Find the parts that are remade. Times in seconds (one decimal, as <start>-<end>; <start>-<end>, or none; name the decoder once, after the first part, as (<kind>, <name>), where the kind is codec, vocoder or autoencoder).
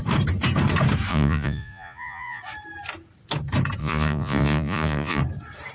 1.1-2.4 (vocoder, Vocos); 3.8-5.2